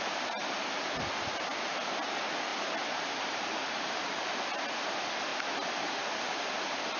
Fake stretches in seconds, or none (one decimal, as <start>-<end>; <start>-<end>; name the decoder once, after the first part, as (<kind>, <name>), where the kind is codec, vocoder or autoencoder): none